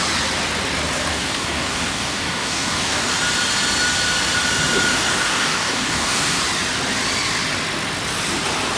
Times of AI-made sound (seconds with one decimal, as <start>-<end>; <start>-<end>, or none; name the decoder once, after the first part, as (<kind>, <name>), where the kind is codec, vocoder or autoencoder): 1.1-3.1 (codec, DAC); 5.1-6.4